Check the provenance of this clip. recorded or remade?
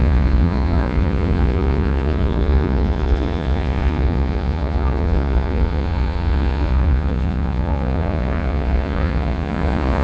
remade